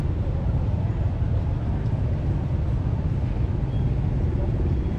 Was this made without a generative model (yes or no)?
yes